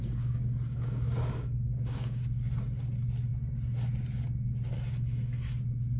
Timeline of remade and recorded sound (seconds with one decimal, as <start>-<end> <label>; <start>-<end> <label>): 0.0-2.2 remade; 2.2-6.0 recorded